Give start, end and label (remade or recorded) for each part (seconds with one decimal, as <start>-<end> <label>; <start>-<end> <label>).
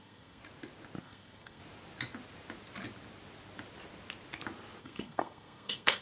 0.0-0.4 remade; 0.4-1.0 recorded; 1.0-1.6 remade; 1.6-4.8 recorded; 4.8-6.0 remade